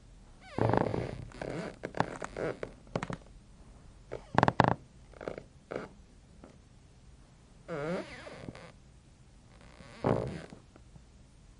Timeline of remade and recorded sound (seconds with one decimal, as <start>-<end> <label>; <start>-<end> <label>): 0.0-5.4 recorded; 5.4-6.8 remade; 6.8-11.6 recorded